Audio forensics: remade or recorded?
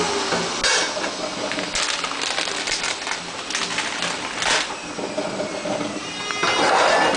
recorded